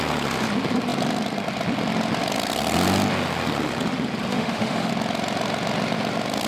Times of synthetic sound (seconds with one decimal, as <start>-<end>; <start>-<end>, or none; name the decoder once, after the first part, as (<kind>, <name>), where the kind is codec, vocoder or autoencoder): 4.3-4.9 (autoencoder, DAC-VAE)